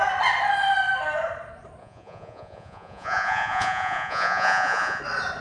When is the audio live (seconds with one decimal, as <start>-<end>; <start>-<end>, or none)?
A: 0.0-1.8; 5.0-5.4